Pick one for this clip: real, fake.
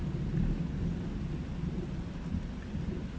real